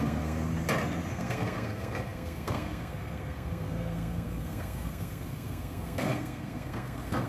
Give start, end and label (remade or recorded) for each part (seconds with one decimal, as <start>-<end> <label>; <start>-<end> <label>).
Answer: 0.0-0.5 remade; 0.5-1.1 recorded; 1.1-7.3 remade